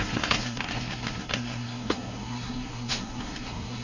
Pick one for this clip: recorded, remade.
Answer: remade